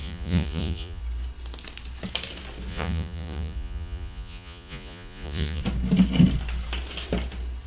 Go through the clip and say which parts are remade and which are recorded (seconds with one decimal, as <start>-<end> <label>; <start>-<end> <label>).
0.0-1.0 remade; 1.0-2.7 recorded; 2.7-5.6 remade; 5.6-7.7 recorded

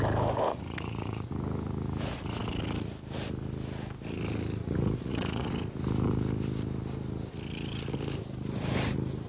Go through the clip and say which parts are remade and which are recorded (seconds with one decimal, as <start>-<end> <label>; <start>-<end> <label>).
0.0-0.5 recorded; 0.5-1.3 remade; 1.3-4.6 recorded; 4.6-5.5 remade; 5.5-9.3 recorded

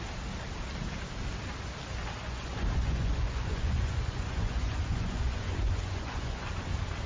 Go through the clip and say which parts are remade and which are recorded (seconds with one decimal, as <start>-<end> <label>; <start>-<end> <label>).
0.0-2.2 recorded; 2.2-6.5 remade; 6.5-7.1 recorded

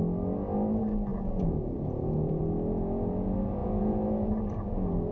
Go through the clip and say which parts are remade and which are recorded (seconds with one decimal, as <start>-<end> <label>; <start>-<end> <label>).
0.0-1.1 recorded; 1.1-2.4 remade; 2.4-3.6 recorded; 3.6-4.4 remade; 4.4-5.1 recorded

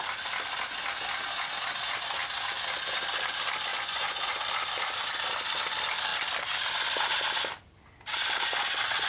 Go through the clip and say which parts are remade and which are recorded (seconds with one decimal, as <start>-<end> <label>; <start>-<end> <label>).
0.0-3.7 recorded; 3.7-4.3 remade; 4.3-9.1 recorded

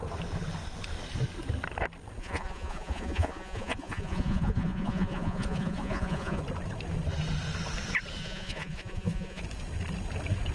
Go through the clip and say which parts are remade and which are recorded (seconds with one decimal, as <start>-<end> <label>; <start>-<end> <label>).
0.0-2.2 recorded; 2.2-6.4 remade; 6.4-8.2 recorded; 8.2-9.4 remade; 9.4-10.5 recorded

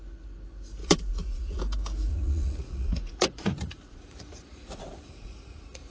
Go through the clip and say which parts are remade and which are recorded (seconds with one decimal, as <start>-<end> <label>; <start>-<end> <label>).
0.0-0.8 recorded; 0.8-1.6 remade; 1.6-2.1 recorded; 2.1-5.9 remade